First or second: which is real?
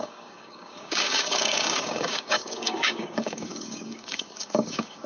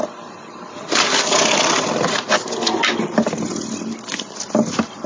second